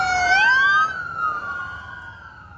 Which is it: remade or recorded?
recorded